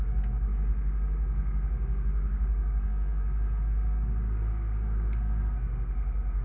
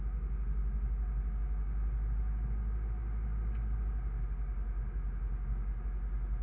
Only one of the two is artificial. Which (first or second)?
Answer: first